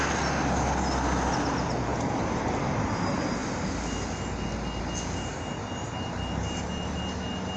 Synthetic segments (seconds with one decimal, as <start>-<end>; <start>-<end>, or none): none

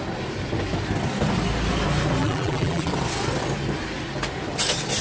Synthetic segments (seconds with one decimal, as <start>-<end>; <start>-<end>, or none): 2.2-2.9

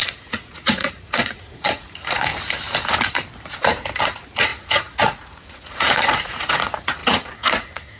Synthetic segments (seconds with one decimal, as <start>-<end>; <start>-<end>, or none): 0.0-2.3; 4.0-8.0

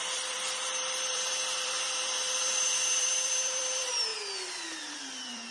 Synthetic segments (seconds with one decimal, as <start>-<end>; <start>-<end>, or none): 0.0-4.1; 4.8-5.5

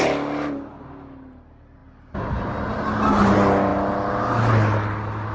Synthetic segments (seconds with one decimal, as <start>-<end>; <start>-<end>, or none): none

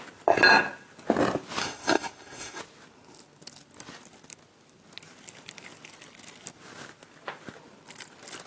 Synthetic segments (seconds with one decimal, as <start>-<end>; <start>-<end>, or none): 1.6-2.6

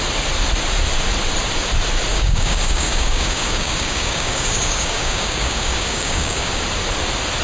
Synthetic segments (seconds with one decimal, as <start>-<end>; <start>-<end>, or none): 2.1-6.5

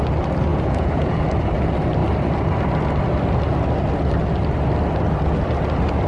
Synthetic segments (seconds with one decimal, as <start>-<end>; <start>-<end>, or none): 0.5-1.2